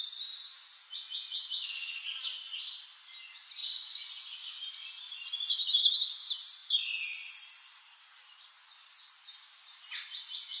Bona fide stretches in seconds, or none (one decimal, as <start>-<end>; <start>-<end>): 0.0-10.6

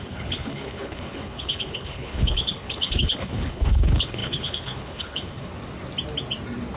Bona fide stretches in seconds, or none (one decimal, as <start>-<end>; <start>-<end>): 5.5-6.8

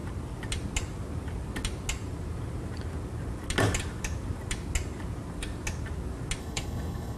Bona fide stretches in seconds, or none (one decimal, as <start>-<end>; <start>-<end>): 0.0-6.4

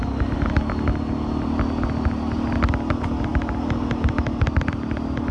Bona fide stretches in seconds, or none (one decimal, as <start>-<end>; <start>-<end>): 0.0-5.3

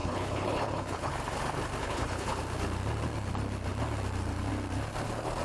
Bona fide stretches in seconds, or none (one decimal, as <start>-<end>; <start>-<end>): 1.1-1.8; 2.4-5.4

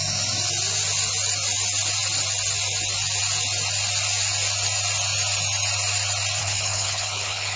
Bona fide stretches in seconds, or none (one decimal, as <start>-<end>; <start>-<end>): 0.0-6.4

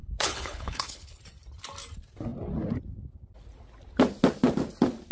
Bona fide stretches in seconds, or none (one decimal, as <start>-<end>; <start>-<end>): 1.2-5.1